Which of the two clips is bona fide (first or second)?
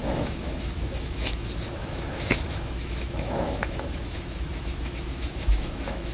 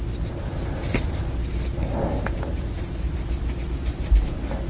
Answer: second